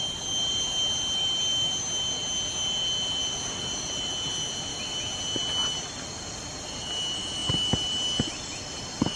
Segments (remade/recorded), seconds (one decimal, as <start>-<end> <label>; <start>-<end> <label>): 0.0-9.2 recorded